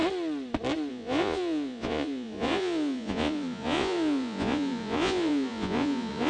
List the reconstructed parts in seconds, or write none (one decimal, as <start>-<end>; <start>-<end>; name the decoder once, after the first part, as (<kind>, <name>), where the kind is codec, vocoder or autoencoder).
0.9-6.3 (vocoder, Vocos)